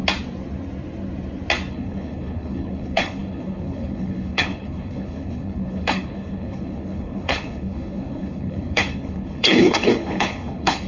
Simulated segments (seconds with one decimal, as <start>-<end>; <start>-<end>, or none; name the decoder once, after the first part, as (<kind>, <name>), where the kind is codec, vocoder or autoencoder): 1.7-10.9 (codec, HILCodec)